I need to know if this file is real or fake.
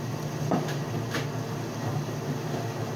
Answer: real